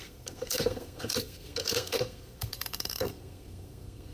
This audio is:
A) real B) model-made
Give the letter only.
B